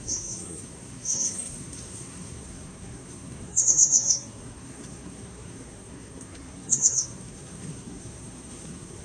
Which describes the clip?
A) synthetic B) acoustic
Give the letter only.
A